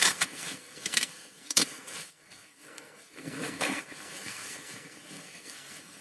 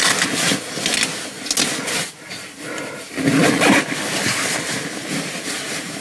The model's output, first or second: first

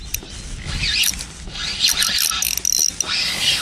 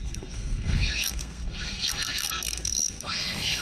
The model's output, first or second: second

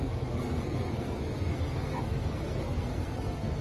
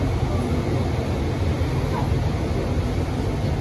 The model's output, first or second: first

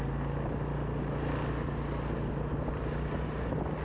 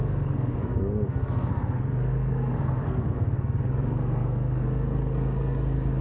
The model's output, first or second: second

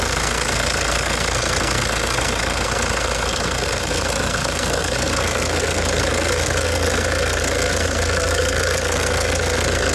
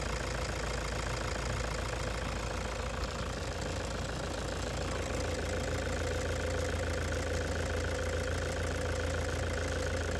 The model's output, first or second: first